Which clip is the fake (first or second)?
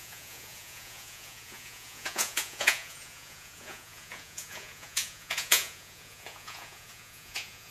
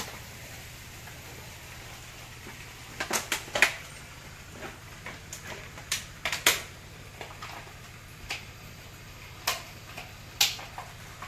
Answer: first